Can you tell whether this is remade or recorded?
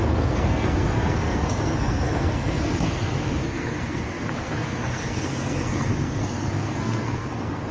remade